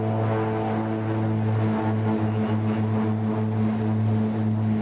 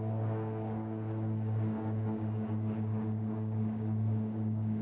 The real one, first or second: first